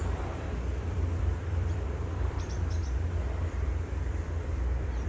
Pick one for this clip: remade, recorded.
remade